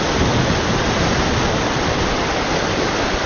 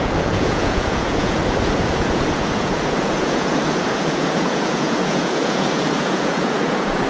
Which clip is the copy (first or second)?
second